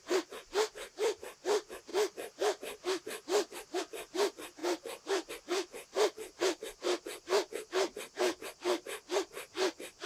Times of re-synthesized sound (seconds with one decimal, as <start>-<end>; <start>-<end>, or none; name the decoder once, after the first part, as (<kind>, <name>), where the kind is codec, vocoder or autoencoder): none